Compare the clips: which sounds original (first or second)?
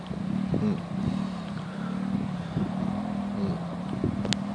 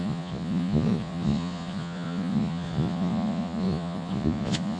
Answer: first